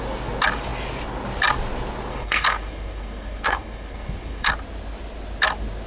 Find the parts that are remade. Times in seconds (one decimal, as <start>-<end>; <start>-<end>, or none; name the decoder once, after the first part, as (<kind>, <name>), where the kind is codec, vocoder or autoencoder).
2.1-4.5 (codec, SNAC)

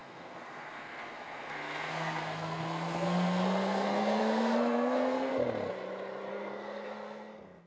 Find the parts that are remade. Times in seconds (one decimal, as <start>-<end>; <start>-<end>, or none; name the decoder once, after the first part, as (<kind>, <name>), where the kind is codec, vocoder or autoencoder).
0.0-5.3 (codec, SNAC); 6.3-7.7

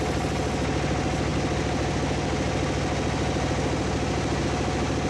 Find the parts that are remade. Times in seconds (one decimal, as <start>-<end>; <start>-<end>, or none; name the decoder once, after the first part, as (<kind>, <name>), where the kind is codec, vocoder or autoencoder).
none